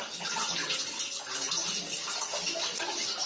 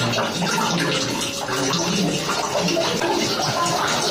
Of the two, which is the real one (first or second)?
second